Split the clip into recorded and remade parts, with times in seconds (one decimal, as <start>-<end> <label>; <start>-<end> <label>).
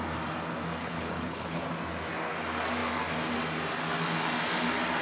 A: 0.0-0.8 recorded; 0.8-1.6 remade; 1.6-5.0 recorded